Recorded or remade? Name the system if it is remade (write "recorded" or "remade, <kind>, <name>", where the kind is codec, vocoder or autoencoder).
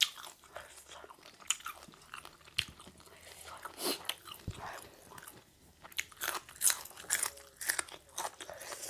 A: recorded